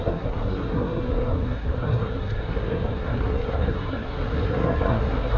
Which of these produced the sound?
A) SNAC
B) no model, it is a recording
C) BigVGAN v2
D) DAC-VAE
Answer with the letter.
A